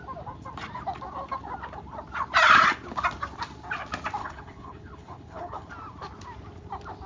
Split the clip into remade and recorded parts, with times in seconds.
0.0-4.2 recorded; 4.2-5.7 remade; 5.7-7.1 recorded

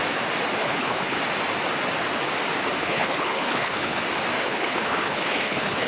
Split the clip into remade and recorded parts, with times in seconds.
0.0-0.6 recorded; 0.6-1.2 remade; 1.2-2.8 recorded; 2.8-4.0 remade; 4.0-4.4 recorded; 4.4-5.9 remade

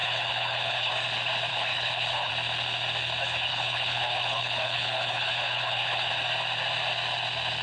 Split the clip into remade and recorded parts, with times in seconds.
0.0-0.9 remade; 0.9-1.5 recorded; 1.5-2.3 remade; 2.3-3.5 recorded; 3.5-6.1 remade; 6.1-7.6 recorded

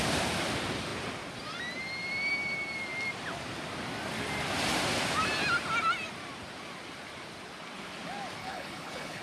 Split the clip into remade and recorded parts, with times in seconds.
0.0-8.4 recorded; 8.4-9.2 remade